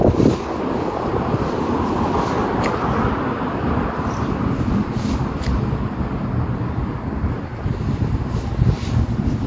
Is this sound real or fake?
real